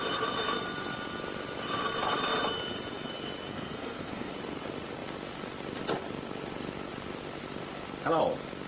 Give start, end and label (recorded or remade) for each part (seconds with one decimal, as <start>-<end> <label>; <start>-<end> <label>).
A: 0.0-3.5 recorded; 3.5-4.3 remade; 4.3-8.7 recorded